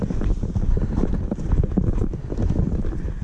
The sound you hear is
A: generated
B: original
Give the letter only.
B